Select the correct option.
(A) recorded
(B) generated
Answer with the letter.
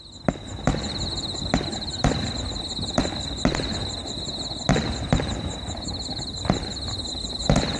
A